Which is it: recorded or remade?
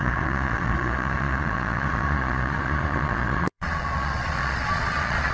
remade